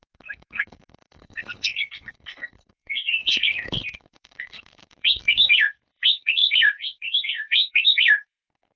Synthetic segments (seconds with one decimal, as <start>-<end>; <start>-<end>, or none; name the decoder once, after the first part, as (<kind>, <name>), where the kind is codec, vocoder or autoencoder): 0.0-8.8 (codec, SNAC)